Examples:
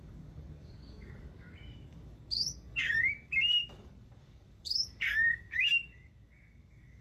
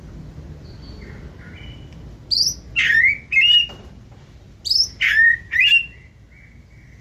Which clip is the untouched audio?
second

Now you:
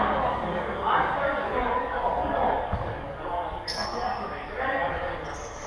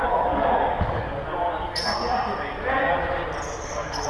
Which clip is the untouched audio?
second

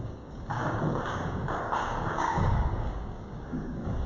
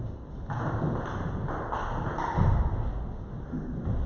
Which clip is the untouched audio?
second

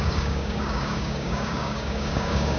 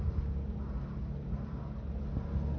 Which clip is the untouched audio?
second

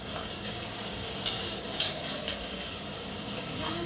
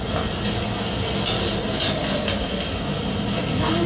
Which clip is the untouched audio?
second